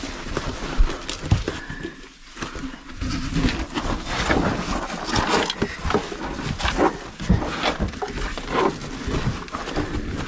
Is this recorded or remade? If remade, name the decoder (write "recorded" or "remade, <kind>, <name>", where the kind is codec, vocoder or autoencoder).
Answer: recorded